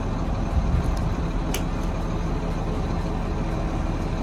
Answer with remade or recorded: recorded